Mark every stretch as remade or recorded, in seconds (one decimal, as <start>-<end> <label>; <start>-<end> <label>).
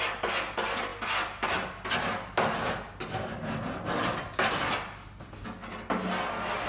0.0-6.7 recorded